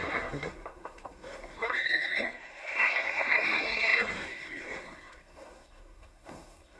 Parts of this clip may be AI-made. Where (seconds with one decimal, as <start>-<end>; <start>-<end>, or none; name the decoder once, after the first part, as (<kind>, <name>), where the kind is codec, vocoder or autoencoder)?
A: 0.0-6.8 (codec, SNAC)